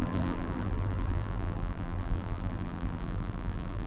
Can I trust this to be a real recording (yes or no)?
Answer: no